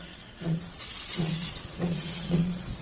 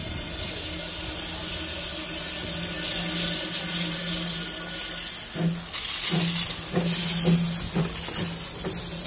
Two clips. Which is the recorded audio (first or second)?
second